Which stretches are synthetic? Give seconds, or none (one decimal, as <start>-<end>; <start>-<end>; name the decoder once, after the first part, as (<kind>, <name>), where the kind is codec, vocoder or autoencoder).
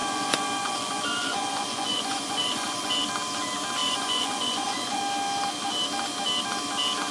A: 0.0-2.9 (vocoder, Vocos); 3.8-5.0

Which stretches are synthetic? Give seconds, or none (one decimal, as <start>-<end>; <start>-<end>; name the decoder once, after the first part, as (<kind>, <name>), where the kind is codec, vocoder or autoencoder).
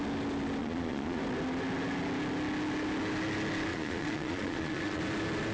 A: 0.6-1.2 (vocoder, Vocos); 3.7-5.0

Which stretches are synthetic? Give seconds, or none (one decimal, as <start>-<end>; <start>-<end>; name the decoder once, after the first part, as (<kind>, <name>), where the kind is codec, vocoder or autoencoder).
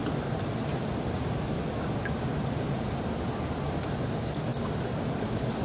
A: none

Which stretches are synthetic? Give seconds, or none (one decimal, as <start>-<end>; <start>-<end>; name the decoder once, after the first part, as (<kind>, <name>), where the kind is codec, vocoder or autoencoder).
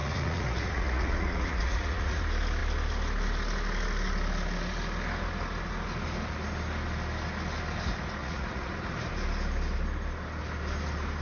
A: 0.0-2.2 (vocoder, Vocos); 8.2-8.7